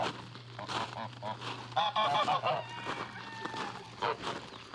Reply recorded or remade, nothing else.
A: recorded